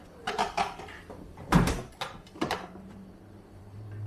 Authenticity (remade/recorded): remade